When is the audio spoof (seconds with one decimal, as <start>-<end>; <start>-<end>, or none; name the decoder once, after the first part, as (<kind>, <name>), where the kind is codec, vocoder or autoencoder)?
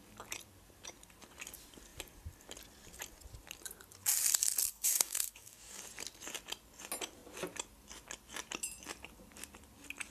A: 4.7-5.8 (codec, DAC)